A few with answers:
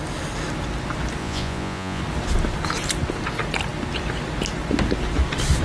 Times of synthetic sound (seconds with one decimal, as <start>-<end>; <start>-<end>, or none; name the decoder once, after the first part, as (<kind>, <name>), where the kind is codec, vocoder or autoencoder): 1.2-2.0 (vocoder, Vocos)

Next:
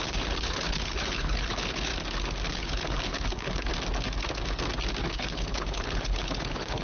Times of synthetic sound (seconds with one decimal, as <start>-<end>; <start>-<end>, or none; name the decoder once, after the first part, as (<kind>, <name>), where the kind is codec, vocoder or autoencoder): 0.0-1.9 (codec, HILCodec); 2.5-3.7; 5.0-6.8

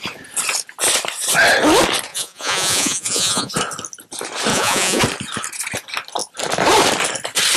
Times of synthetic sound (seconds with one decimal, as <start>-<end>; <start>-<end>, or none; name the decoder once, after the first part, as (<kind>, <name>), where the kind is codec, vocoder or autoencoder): 2.1-3.5 (vocoder, Vocos); 4.5-5.0

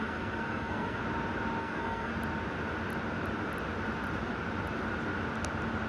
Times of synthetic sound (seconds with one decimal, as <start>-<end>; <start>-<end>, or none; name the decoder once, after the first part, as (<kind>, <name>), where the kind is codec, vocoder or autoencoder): 0.0-1.0 (codec, SNAC); 1.6-2.1